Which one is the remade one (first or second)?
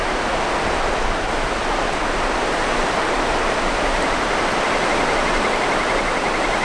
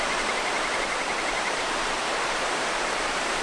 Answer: second